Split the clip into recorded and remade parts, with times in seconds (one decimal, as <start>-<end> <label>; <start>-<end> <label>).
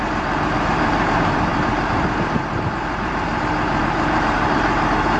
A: 0.0-3.3 remade; 3.3-3.8 recorded; 3.8-5.2 remade